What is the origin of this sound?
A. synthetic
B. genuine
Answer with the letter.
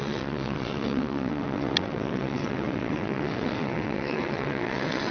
A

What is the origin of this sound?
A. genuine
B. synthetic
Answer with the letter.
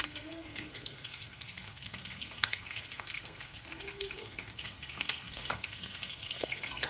B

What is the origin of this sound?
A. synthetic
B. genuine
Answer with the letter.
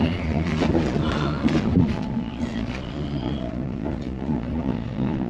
A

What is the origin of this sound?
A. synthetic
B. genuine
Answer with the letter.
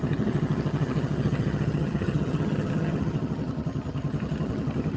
A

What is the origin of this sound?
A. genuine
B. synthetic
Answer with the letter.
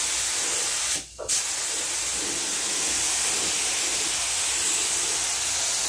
A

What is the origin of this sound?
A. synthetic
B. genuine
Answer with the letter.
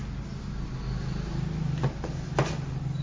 B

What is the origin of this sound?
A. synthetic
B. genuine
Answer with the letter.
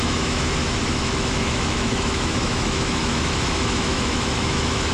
A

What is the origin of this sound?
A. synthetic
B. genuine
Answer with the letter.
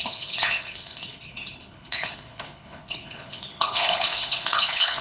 A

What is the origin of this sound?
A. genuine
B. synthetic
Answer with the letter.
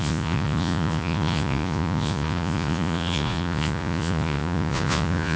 B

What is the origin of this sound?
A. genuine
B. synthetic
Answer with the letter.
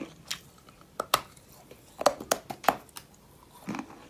A